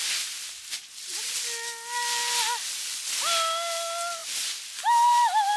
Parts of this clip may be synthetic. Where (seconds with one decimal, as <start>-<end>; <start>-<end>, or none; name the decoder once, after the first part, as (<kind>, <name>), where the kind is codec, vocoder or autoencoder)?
none